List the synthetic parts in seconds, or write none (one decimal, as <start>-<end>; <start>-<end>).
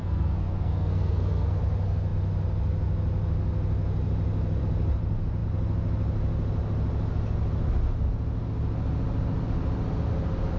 0.0-1.6